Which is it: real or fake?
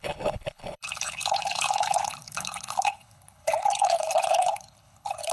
fake